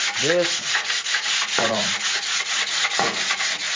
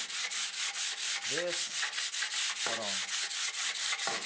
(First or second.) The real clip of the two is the second